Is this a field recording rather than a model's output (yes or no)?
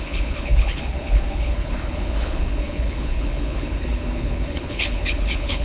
no